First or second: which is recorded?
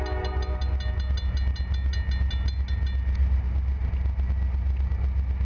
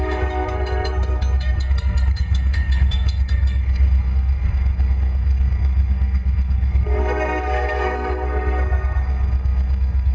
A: first